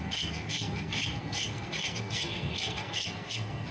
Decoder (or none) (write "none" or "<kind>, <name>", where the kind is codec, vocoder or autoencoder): codec, SNAC